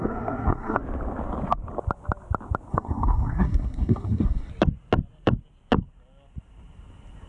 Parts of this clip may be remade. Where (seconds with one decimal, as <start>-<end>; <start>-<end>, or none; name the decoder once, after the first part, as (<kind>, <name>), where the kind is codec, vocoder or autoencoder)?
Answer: 0.0-0.8 (codec, SNAC); 2.7-4.5